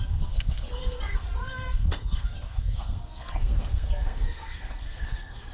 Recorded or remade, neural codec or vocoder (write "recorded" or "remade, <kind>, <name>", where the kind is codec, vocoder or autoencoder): remade, codec, SNAC